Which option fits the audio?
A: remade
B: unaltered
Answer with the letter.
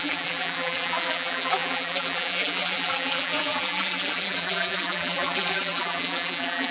A